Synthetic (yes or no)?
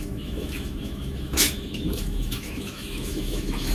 yes